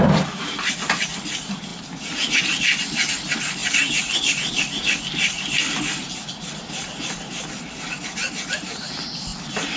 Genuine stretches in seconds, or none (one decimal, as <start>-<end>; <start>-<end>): 0.0-3.6; 5.9-9.3